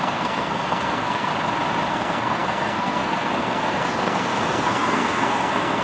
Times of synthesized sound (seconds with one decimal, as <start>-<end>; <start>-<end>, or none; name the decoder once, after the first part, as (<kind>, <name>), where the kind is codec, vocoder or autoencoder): 0.0-1.3 (codec, SNAC); 1.9-5.8